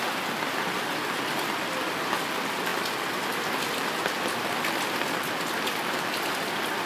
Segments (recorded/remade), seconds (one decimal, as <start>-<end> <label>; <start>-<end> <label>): 0.0-6.9 recorded